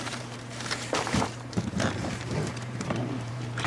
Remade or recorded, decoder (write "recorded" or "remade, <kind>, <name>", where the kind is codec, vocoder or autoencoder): remade, vocoder, BigVGAN v2